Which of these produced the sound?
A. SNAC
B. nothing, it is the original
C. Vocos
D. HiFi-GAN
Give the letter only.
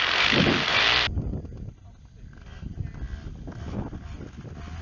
B